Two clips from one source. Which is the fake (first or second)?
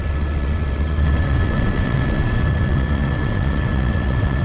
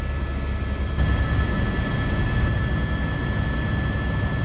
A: first